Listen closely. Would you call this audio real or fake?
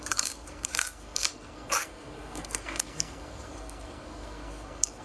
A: fake